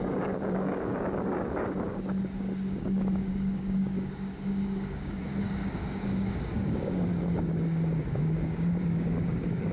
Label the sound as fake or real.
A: fake